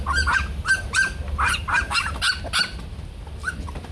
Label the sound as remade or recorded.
recorded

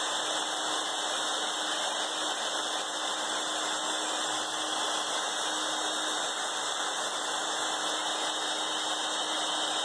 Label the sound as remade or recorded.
recorded